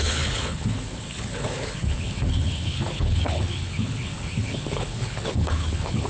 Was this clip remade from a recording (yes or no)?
yes